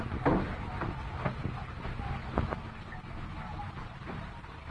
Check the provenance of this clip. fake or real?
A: real